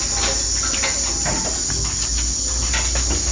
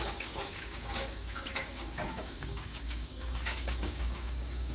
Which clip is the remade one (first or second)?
second